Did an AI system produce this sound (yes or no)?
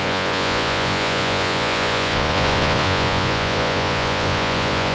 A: yes